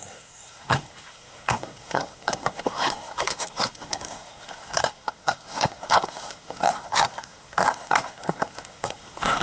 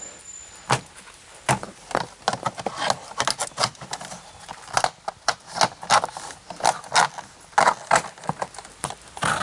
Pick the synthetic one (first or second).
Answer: first